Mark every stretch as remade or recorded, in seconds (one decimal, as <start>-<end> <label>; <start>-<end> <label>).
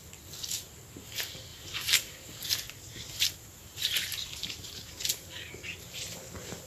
0.0-1.5 recorded; 1.5-5.5 remade; 5.5-6.7 recorded